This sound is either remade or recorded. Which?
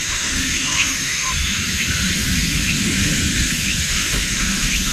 remade